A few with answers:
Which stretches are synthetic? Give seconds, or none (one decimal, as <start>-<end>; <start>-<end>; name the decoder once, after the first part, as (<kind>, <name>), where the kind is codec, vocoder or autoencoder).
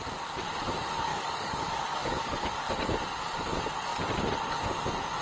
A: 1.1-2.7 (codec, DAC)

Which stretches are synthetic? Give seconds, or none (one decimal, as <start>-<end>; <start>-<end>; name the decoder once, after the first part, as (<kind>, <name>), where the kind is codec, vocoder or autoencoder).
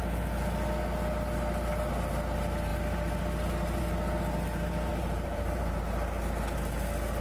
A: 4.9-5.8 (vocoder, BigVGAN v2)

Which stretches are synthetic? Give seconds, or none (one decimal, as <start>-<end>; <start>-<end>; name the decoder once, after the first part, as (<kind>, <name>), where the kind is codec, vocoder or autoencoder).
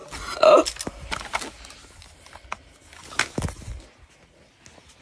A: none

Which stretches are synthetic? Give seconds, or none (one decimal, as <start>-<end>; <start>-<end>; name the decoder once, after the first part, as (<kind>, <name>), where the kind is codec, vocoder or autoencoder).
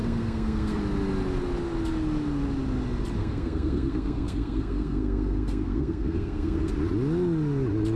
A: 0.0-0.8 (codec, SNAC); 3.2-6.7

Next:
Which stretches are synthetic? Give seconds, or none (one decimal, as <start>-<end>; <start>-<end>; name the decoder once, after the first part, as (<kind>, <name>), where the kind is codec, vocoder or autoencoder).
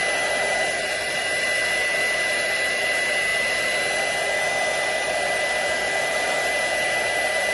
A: 0.0-3.3 (vocoder, BigVGAN v2); 5.1-7.5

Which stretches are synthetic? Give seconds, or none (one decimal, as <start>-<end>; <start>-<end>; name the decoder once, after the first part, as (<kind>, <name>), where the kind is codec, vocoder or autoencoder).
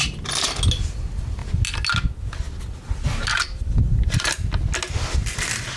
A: none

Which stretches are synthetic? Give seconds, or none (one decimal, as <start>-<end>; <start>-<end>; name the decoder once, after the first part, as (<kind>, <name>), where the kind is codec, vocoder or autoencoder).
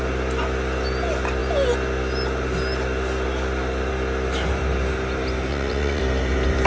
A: 5.5-6.0 (vocoder, Vocos)